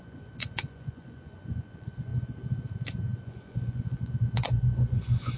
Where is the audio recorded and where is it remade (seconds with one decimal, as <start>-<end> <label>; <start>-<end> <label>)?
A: 0.0-2.1 remade; 2.1-3.2 recorded; 3.2-5.4 remade

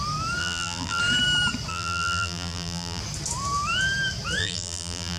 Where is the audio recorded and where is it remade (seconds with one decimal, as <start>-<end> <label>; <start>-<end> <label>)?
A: 0.0-0.4 recorded; 0.4-1.0 remade; 1.0-1.7 recorded; 1.7-3.0 remade; 3.0-4.4 recorded; 4.4-5.2 remade

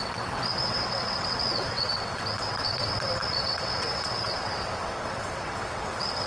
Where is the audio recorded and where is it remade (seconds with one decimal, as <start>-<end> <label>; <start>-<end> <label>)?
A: 0.0-6.3 remade

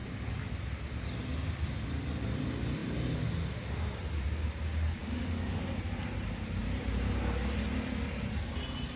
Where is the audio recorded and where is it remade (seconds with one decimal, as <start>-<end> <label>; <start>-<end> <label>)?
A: 0.0-5.0 recorded; 5.0-5.6 remade; 5.6-9.0 recorded